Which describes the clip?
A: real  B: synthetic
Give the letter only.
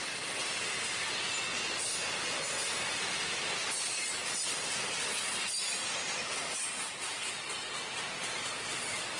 A